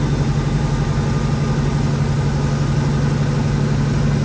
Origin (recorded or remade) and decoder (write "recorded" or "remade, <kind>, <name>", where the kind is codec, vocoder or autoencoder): recorded